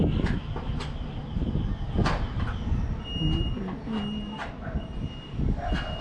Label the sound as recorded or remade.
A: recorded